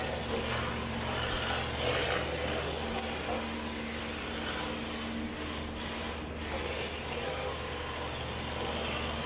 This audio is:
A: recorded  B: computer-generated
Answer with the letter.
A